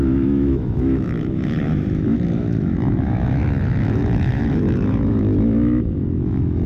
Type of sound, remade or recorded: remade